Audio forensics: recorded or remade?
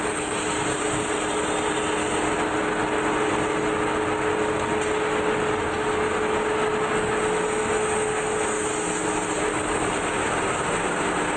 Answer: recorded